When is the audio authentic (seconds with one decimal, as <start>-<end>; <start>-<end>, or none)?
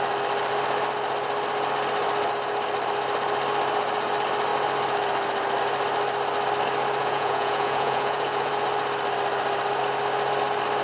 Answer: 0.0-7.0; 8.5-10.8